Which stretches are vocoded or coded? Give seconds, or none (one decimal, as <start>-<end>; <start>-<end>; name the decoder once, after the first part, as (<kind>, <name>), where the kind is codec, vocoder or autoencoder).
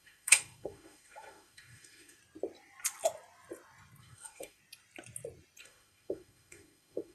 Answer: 0.0-2.2 (autoencoder, DAC-VAE); 4.0-4.6; 5.6-7.1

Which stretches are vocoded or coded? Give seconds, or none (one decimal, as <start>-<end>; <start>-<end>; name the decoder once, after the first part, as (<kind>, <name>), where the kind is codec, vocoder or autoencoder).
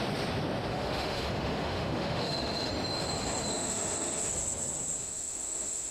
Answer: 0.7-2.7 (autoencoder, DAC-VAE); 3.5-4.3; 5.0-5.9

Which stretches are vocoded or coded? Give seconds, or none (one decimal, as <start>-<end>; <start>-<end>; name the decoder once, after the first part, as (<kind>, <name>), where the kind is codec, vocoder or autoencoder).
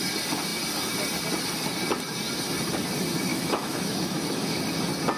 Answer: 3.3-4.6 (autoencoder, DAC-VAE)